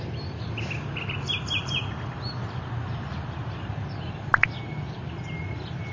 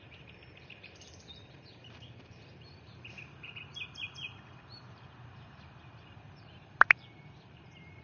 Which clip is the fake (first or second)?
second